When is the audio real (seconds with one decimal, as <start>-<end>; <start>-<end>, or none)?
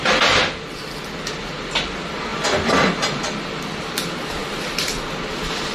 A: 0.0-5.7